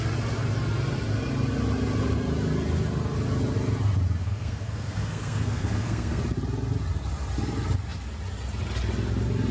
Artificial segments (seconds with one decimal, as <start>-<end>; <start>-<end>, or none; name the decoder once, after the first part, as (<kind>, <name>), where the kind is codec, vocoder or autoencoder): 4.2-6.2 (codec, SNAC)